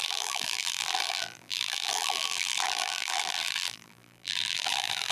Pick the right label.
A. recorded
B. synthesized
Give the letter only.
B